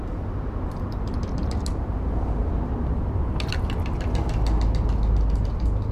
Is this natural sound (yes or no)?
yes